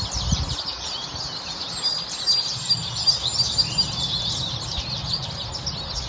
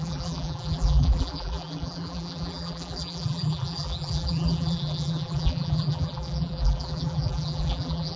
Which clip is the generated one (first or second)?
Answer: second